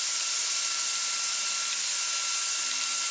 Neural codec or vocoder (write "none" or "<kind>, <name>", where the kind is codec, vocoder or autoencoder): none